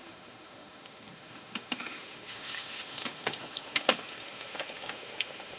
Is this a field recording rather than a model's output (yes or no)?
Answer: no